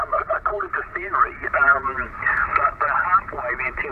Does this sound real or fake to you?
real